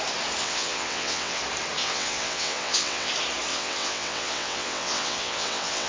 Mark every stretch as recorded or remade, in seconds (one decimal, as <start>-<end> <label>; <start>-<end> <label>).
0.0-0.4 recorded; 0.4-1.4 remade; 1.4-1.8 recorded; 1.8-3.1 remade; 3.1-3.5 recorded; 3.5-5.9 remade